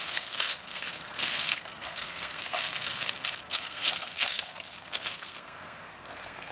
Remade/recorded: remade